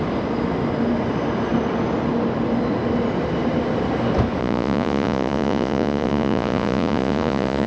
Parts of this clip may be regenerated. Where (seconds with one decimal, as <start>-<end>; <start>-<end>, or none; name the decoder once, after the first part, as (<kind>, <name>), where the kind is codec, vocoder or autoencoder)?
4.4-7.7 (vocoder, Vocos)

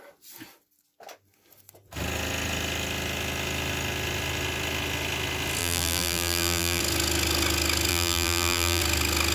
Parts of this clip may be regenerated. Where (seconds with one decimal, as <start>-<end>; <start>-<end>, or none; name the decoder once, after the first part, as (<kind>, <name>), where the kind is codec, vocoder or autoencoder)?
5.6-6.8 (vocoder, BigVGAN v2); 7.9-8.8

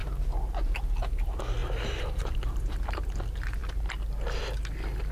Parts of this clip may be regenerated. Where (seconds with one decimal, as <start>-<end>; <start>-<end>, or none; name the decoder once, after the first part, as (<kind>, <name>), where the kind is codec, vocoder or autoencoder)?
1.6-2.8 (vocoder, BigVGAN v2)